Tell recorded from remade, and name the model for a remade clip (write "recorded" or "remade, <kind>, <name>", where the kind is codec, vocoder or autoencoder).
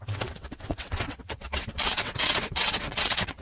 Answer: remade, vocoder, WaveNeXt